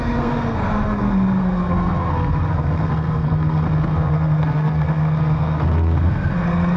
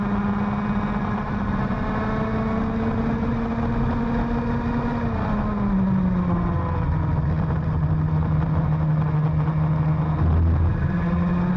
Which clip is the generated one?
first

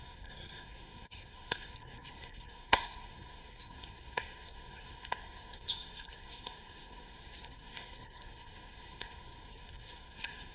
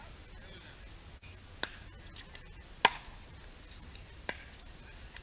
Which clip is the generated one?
first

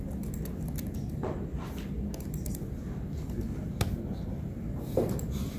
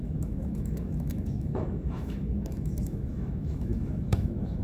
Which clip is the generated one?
second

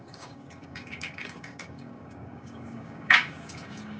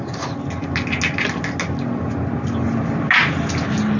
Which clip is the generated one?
first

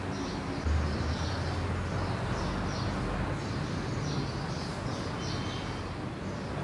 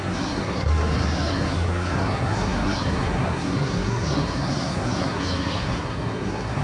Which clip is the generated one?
second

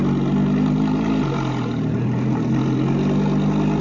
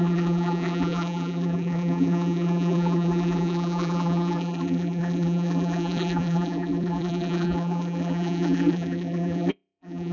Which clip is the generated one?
second